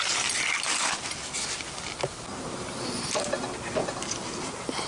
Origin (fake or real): real